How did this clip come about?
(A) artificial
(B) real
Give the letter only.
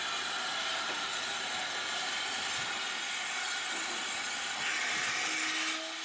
B